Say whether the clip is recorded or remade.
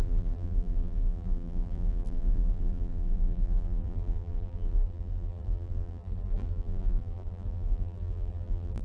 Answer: remade